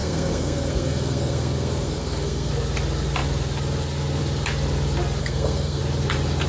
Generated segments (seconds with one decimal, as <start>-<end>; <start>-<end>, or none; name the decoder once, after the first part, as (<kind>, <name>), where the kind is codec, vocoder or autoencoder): 0.0-2.5 (codec, SNAC); 5.2-5.8